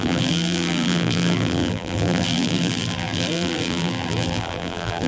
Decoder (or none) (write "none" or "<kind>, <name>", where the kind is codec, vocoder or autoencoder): vocoder, BigVGAN v2